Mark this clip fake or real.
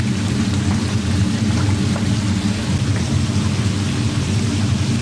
real